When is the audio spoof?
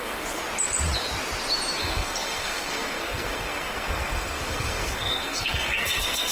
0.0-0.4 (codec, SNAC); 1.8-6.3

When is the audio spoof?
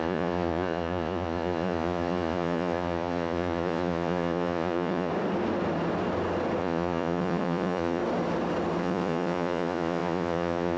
0.0-5.1 (vocoder, Vocos); 6.6-8.0; 8.8-10.8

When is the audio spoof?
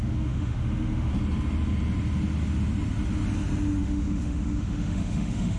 0.0-1.1 (autoencoder, DAC-VAE); 3.8-5.6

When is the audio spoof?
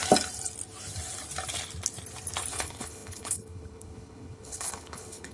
2.5-5.3 (codec, HILCodec)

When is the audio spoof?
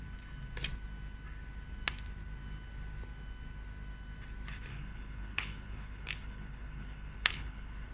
4.7-7.9 (codec, HILCodec)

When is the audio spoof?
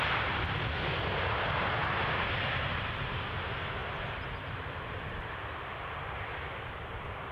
none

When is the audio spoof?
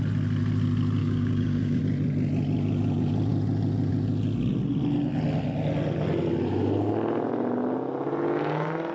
1.0-1.8 (codec, DAC)